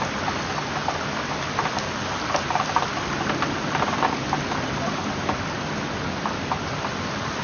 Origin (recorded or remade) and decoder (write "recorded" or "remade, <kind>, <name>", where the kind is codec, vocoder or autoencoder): recorded